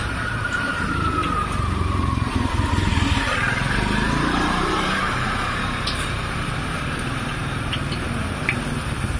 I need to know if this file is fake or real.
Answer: fake